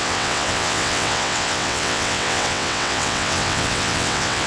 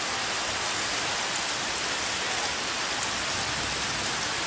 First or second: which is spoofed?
first